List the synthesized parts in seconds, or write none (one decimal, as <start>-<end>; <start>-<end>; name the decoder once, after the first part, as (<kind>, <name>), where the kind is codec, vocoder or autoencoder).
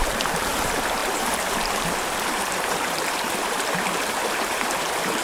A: 0.0-5.2 (vocoder, BigVGAN v2)